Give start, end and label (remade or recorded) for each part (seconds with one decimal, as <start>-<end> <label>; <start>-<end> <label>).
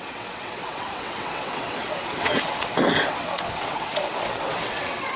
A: 0.0-5.2 remade